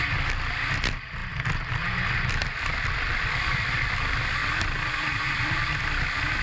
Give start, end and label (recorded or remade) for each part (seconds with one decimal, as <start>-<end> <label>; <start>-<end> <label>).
0.0-6.4 recorded